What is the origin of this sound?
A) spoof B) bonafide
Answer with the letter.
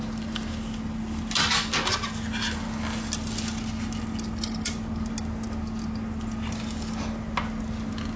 B